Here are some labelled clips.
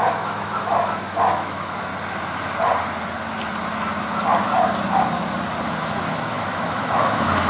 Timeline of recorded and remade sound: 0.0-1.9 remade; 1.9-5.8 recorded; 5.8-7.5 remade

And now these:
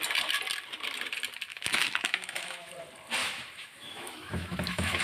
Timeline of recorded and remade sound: 0.0-1.5 recorded; 1.5-2.7 remade; 2.7-3.2 recorded; 3.2-5.0 remade

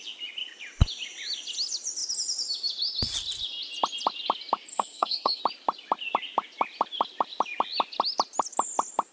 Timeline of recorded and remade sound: 0.0-4.7 recorded; 4.7-5.4 remade; 5.4-9.1 recorded

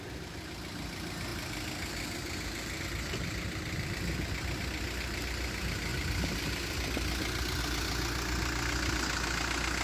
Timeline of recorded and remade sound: 0.0-9.8 recorded